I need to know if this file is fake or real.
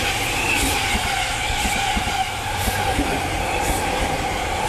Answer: real